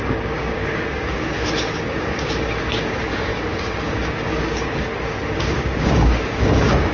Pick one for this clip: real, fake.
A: fake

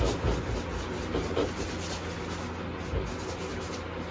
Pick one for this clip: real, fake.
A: real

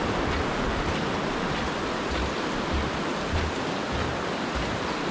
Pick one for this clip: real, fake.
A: real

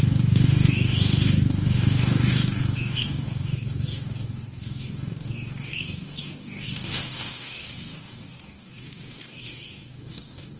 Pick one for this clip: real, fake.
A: fake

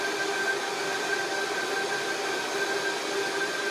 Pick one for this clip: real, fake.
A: real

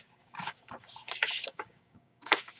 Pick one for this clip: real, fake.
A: fake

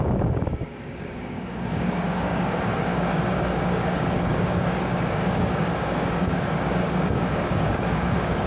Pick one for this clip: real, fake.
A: fake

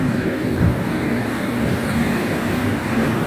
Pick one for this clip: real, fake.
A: fake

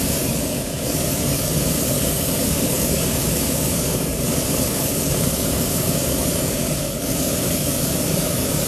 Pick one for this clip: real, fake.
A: fake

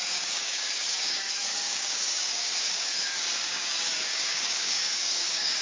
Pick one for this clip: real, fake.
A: fake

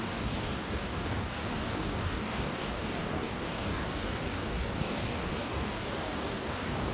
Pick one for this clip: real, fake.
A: fake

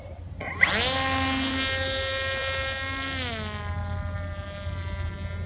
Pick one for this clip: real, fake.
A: real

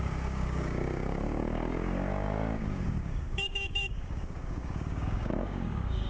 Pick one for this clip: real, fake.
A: fake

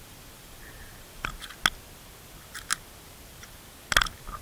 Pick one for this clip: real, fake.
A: real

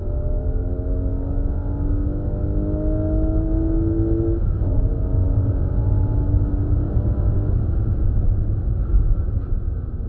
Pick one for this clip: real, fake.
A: real